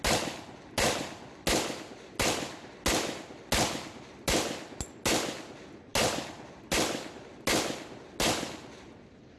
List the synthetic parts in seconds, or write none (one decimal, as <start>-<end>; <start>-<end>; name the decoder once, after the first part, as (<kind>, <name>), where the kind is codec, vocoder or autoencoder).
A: none

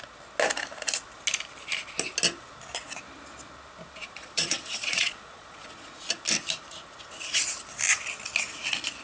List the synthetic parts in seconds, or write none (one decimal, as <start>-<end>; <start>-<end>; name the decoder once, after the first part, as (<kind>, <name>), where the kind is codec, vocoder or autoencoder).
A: 4.0-6.1 (vocoder, Vocos)

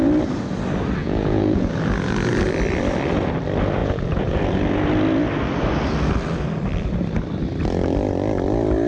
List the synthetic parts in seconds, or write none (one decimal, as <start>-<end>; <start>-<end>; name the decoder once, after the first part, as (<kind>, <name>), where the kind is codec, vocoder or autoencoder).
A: 1.0-1.7 (vocoder, Vocos); 3.8-4.4

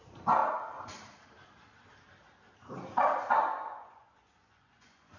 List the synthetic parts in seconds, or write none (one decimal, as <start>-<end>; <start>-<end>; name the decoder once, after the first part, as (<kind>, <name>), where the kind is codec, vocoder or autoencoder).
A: 3.5-5.2 (vocoder, Vocos)

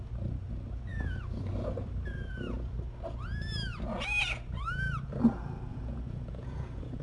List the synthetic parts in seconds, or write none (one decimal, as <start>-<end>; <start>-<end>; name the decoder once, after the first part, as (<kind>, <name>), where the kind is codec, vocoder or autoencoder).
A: 5.7-7.0 (vocoder, Vocos)